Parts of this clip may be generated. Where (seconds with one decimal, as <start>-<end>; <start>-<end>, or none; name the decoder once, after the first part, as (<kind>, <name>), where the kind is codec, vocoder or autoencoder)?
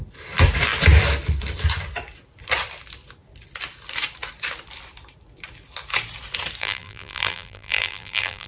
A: 6.6-8.5 (vocoder, BigVGAN v2)